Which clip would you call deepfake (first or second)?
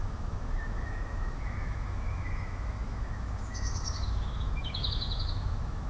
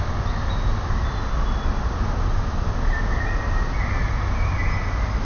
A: first